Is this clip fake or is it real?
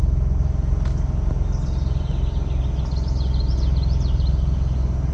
real